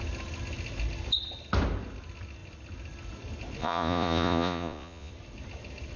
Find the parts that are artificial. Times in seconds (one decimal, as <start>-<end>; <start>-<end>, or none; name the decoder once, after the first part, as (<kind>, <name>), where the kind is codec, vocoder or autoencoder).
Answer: 3.6-5.1 (vocoder, Vocos)